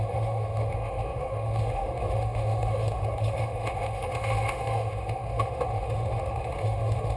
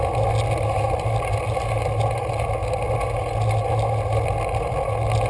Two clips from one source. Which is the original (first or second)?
second